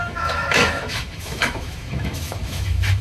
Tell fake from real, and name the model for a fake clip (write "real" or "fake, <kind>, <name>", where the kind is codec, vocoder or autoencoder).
fake, autoencoder, DAC-VAE